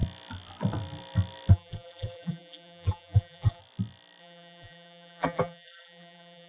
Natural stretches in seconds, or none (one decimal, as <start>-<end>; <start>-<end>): 0.0-1.5; 3.6-4.2

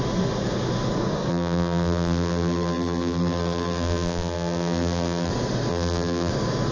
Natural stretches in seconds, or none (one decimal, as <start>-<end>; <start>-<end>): 0.0-1.3; 5.3-5.7; 6.3-6.7

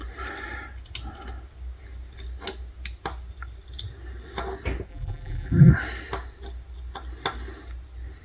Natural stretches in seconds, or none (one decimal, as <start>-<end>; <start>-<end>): 0.0-4.9; 5.7-8.2

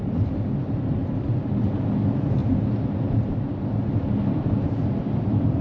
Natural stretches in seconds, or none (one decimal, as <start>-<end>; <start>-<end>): 1.0-1.6; 2.4-3.8

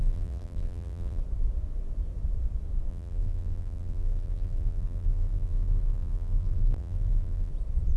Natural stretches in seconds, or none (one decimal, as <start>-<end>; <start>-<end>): 1.2-2.9; 7.5-8.0